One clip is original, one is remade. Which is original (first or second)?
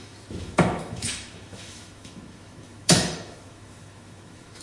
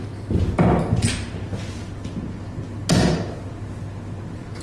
second